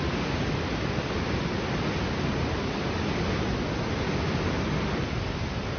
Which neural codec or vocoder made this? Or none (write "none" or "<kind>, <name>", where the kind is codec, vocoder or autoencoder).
none